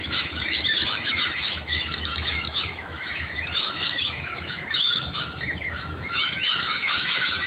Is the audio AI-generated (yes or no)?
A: yes